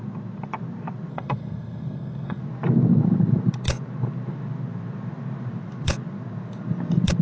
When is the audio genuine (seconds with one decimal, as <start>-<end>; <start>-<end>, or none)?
0.0-1.1; 2.4-7.2